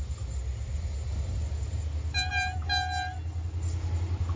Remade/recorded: recorded